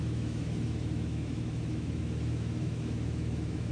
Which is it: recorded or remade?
remade